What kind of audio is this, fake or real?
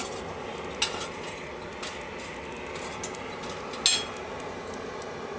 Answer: real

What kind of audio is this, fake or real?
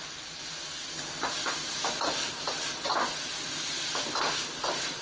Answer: real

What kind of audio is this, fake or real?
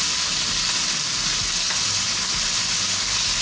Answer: real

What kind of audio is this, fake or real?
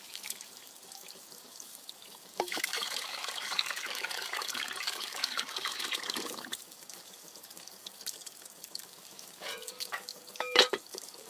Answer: fake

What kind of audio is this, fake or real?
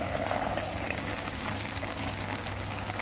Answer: fake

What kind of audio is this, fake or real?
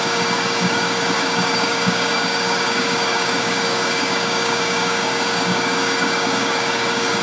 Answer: fake